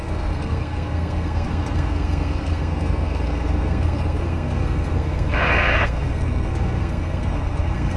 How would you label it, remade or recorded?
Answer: remade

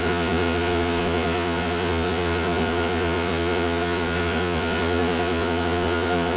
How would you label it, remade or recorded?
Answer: remade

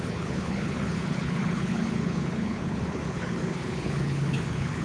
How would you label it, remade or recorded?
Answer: remade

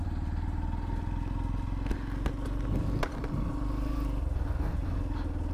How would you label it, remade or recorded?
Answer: recorded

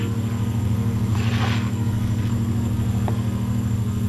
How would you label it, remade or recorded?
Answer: remade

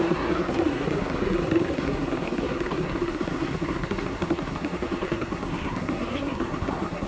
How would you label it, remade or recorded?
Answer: remade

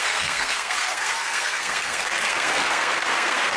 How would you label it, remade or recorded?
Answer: remade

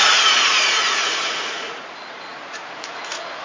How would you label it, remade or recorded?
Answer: remade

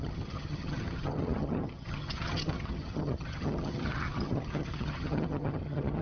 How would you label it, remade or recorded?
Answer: remade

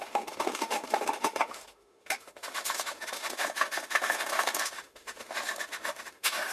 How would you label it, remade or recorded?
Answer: remade